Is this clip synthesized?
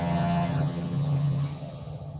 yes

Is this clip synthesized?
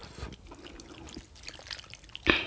no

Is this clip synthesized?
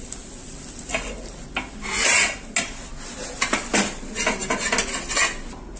no